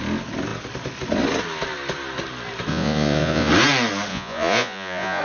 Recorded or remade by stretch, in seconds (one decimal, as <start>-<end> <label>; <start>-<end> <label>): 0.0-2.7 recorded; 2.7-3.5 remade; 3.5-4.1 recorded; 4.1-5.2 remade